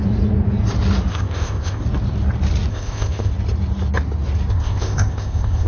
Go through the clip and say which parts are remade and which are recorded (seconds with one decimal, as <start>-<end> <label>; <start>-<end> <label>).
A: 0.0-1.1 recorded; 1.1-1.8 remade; 1.8-2.7 recorded; 2.7-3.3 remade; 3.3-4.5 recorded; 4.5-5.7 remade